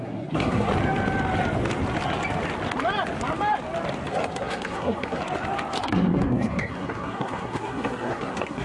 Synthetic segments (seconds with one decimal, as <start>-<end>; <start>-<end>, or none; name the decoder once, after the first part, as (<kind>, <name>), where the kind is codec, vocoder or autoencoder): 0.0-0.7 (codec, SNAC); 4.1-5.2; 5.8-8.6